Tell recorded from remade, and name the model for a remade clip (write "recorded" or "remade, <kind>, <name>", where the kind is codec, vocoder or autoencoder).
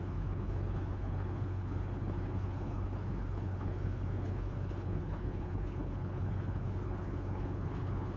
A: remade, codec, HILCodec